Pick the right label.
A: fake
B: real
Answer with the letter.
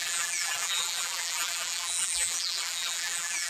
A